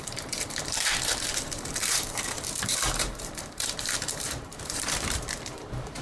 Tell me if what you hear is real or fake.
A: fake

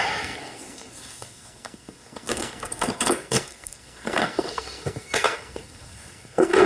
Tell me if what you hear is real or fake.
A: fake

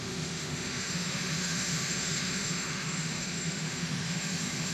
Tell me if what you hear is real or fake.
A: fake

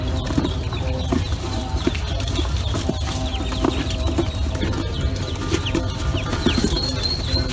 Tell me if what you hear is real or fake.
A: real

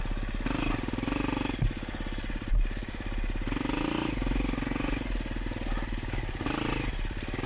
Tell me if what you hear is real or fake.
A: real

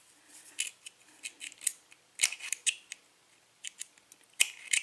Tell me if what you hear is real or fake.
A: real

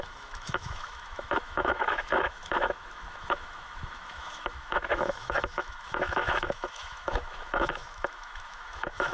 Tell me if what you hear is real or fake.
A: fake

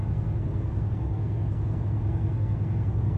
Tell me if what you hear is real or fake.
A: fake